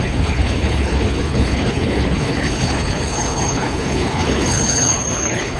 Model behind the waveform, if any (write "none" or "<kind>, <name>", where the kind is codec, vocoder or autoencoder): codec, HILCodec